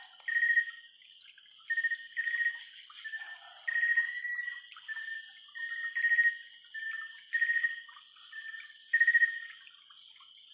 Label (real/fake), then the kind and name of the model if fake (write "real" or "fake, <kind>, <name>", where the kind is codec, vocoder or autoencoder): real